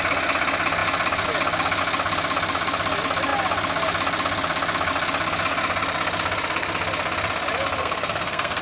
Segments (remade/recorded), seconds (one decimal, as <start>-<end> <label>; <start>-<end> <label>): 0.0-7.8 recorded; 7.8-8.6 remade